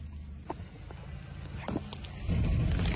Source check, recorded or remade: recorded